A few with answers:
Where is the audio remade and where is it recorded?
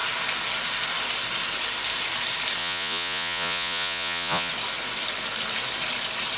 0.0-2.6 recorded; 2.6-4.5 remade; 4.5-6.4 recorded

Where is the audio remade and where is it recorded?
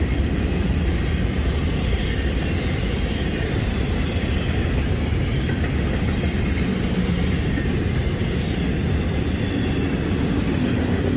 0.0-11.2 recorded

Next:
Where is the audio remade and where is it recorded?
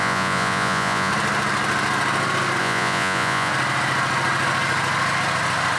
0.0-1.1 remade; 1.1-2.6 recorded; 2.6-3.5 remade; 3.5-5.8 recorded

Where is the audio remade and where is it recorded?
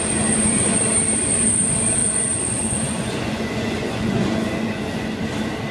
0.0-0.8 remade; 0.8-2.0 recorded; 2.0-5.2 remade; 5.2-5.7 recorded